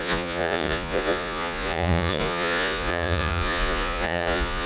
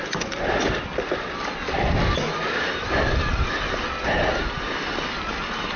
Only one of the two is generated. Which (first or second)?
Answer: first